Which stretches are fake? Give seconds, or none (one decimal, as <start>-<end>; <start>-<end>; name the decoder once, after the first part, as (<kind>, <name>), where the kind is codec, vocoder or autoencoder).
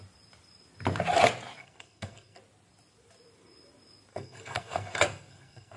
1.6-2.4 (codec, SNAC); 4.1-5.8